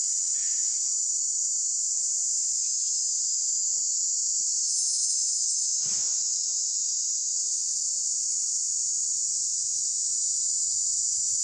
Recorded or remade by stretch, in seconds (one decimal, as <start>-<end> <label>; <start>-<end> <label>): 0.0-0.4 recorded; 0.4-2.0 remade; 2.0-2.6 recorded; 2.6-7.6 remade; 7.6-11.4 recorded